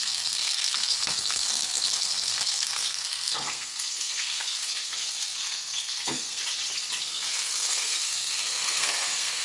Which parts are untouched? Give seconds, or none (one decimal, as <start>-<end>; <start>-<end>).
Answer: 6.4-7.0